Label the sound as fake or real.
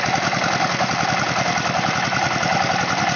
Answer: real